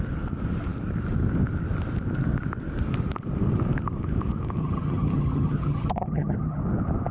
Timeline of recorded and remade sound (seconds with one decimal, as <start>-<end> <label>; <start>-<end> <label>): 0.0-4.6 recorded; 4.6-6.6 remade; 6.6-7.1 recorded